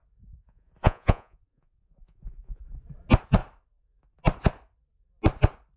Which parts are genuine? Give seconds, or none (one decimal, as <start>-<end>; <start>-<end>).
0.0-0.4; 2.6-5.8

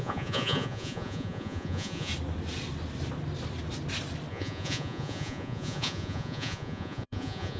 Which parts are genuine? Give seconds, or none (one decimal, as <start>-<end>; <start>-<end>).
2.1-4.3

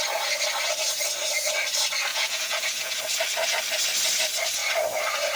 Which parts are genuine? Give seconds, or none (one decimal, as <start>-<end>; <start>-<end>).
0.0-2.1; 3.0-5.4

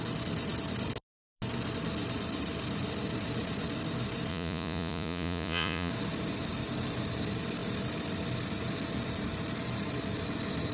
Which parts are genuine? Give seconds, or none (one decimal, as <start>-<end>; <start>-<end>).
0.0-4.3; 5.9-10.7

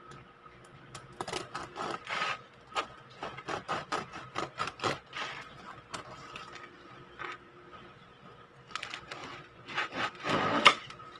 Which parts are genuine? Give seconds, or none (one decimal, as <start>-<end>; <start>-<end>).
0.0-9.2; 10.1-11.2